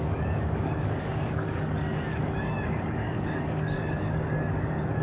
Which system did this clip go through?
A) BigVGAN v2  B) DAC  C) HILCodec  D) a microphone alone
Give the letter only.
B